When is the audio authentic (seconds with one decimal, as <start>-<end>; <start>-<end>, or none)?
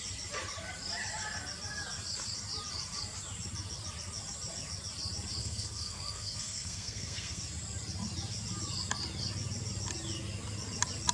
0.0-5.4; 7.4-11.1